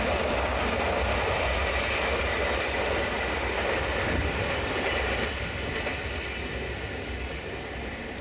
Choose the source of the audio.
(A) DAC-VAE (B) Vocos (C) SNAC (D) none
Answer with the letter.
D